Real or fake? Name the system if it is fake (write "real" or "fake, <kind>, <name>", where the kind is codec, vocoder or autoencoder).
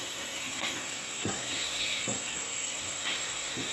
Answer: fake, codec, SNAC